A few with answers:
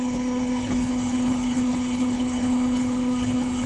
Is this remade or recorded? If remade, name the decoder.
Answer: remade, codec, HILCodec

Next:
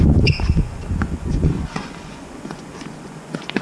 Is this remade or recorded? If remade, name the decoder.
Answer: remade, vocoder, Vocos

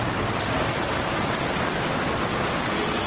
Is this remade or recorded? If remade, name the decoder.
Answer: recorded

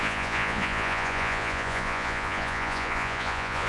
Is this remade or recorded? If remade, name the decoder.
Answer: remade, vocoder, Vocos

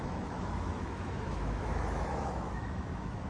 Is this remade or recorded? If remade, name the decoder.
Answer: remade, autoencoder, DAC-VAE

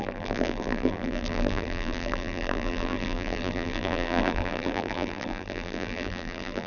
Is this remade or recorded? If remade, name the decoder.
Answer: remade, vocoder, BigVGAN v2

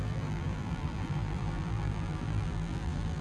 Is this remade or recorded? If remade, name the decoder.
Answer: remade, vocoder, BigVGAN v2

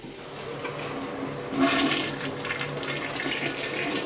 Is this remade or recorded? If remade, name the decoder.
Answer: recorded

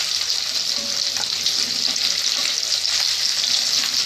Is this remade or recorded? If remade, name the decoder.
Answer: recorded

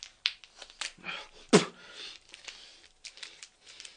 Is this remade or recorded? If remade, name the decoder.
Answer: recorded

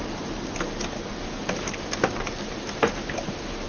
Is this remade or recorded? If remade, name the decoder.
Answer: remade, vocoder, BigVGAN v2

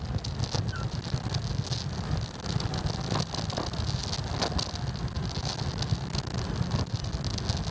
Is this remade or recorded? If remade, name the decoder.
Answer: recorded